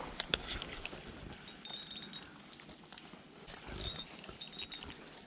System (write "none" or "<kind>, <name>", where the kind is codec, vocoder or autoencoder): none